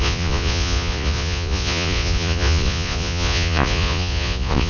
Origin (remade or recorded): remade